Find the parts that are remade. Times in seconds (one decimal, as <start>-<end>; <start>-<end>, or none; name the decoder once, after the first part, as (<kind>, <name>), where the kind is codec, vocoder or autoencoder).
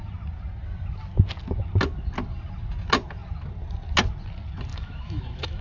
4.7-5.6 (autoencoder, DAC-VAE)